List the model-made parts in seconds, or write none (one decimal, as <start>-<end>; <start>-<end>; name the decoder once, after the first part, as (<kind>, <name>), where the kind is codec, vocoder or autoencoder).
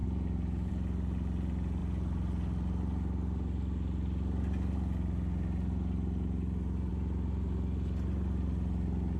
none